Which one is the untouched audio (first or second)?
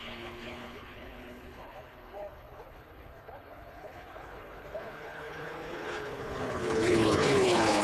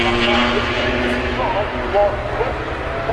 second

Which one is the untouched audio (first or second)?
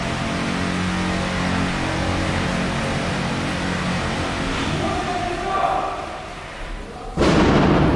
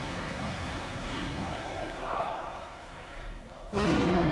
first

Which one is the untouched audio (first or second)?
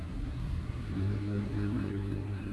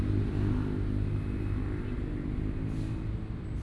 second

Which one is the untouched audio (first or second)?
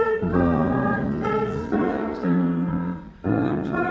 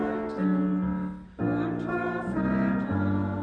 second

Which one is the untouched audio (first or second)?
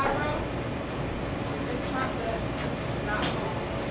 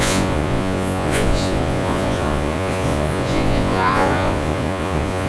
first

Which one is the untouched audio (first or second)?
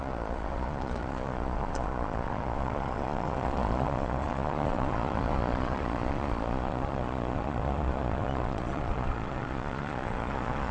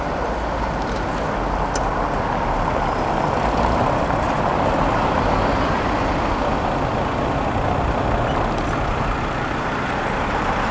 second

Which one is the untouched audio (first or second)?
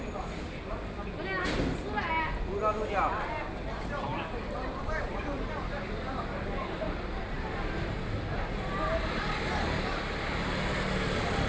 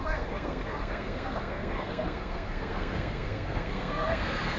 first